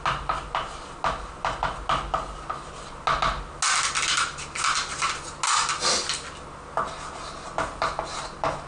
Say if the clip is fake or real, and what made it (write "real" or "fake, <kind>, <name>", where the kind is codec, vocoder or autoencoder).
real